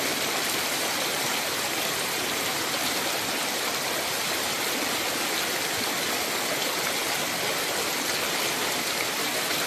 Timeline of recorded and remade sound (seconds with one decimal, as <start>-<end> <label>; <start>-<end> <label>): 0.0-9.7 recorded